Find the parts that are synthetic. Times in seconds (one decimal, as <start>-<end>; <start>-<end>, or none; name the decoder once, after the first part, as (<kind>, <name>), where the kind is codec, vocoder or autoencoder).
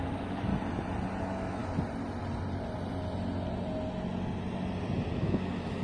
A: 0.0-0.5 (autoencoder, DAC-VAE); 1.2-1.6; 5.1-5.8